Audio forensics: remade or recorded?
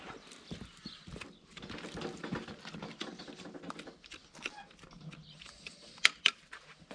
recorded